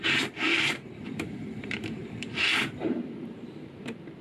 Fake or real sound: fake